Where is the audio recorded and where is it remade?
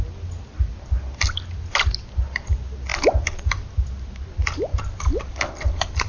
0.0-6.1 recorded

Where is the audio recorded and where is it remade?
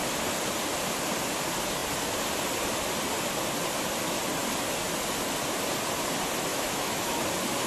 0.0-6.5 recorded; 6.5-7.2 remade; 7.2-7.7 recorded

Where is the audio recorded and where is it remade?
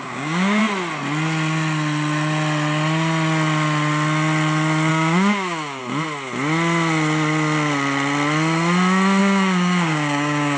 0.0-0.6 remade; 0.6-4.9 recorded; 4.9-5.8 remade; 5.8-9.2 recorded; 9.2-10.6 remade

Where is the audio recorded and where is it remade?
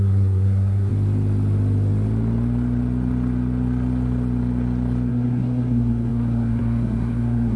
0.0-0.9 remade; 0.9-5.1 recorded; 5.1-7.6 remade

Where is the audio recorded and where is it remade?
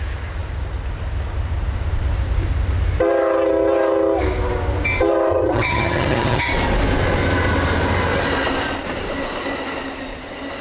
0.0-5.3 recorded; 5.3-6.5 remade; 6.5-10.6 recorded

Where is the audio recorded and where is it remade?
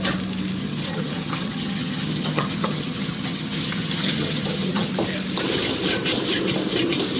0.0-0.6 recorded; 0.6-4.9 remade; 4.9-7.2 recorded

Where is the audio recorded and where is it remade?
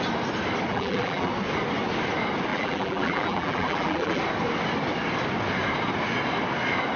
0.0-0.7 recorded; 0.7-1.3 remade; 1.3-2.5 recorded; 2.5-4.2 remade; 4.2-7.0 recorded